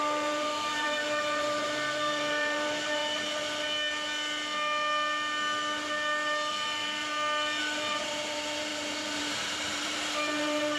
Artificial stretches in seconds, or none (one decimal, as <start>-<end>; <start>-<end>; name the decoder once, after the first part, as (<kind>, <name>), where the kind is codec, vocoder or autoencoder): 0.0-3.0 (vocoder, BigVGAN v2); 6.5-7.1; 7.6-10.8